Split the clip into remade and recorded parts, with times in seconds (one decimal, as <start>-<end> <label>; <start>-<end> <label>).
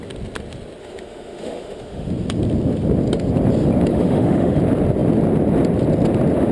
0.0-0.8 recorded; 0.8-2.1 remade; 2.1-3.9 recorded; 3.9-4.6 remade; 4.6-6.5 recorded